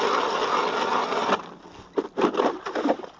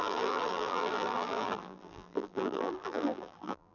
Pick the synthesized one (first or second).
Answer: second